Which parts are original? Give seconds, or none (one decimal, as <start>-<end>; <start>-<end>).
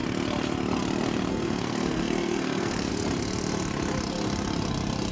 0.0-1.3; 2.9-5.1